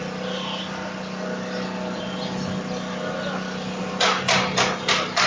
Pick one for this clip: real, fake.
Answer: real